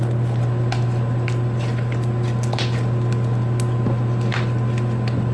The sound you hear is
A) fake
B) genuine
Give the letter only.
B